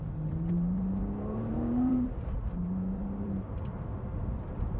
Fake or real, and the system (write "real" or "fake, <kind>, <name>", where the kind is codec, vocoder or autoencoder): fake, vocoder, BigVGAN v2